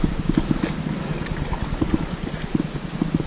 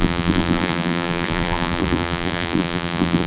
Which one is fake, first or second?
second